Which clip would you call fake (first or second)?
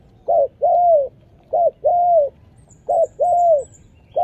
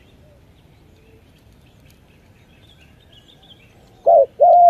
second